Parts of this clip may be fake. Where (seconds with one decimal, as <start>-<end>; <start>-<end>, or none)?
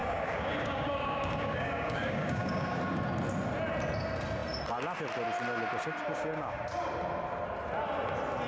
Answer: 0.0-2.8; 6.1-6.6